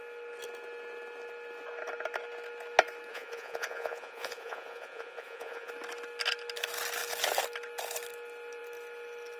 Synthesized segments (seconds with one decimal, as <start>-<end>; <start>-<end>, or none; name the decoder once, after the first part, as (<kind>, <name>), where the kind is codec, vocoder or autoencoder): 3.1-5.7 (vocoder, Vocos)